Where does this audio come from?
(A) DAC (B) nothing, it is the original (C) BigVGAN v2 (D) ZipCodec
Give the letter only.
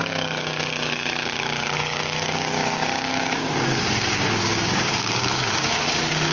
A